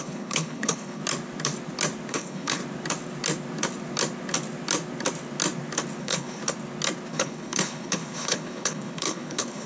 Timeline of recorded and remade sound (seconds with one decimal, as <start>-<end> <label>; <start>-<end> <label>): 0.0-1.0 remade; 1.0-2.1 recorded; 2.1-2.6 remade; 2.6-6.0 recorded; 6.0-6.4 remade; 6.4-7.1 recorded; 7.1-9.7 remade

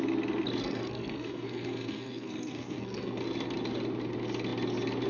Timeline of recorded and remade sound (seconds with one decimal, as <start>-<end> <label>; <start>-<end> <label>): 0.0-0.6 recorded; 0.6-3.2 remade; 3.2-5.1 recorded

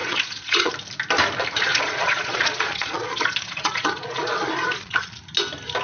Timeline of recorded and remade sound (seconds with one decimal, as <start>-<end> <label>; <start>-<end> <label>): 0.0-0.7 remade; 0.7-1.7 recorded; 1.7-5.2 remade; 5.2-5.8 recorded

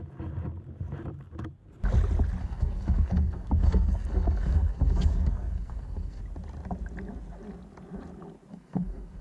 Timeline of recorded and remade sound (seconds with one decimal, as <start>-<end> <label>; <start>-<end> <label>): 0.0-2.4 recorded; 2.4-6.2 remade; 6.2-8.5 recorded; 8.5-9.2 remade

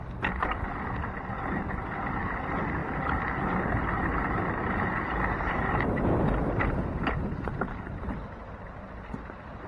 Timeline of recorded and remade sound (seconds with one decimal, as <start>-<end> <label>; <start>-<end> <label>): 0.0-9.7 recorded

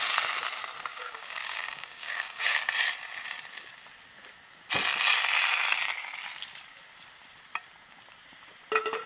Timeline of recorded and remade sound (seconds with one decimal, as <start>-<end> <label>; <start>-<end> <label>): 0.0-0.9 recorded; 0.9-2.6 remade; 2.6-9.1 recorded

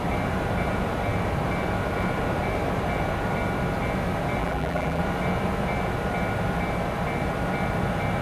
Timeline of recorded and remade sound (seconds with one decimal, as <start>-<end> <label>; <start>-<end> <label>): 0.0-4.4 recorded; 4.4-5.0 remade; 5.0-8.2 recorded

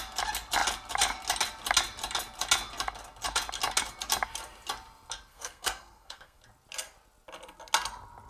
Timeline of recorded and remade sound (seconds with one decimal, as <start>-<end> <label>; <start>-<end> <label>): 0.0-5.3 recorded; 5.3-6.4 remade; 6.4-8.3 recorded